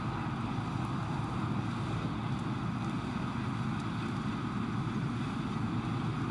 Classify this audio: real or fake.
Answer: real